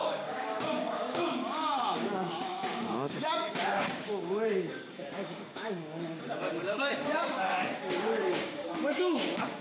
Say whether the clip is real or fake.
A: fake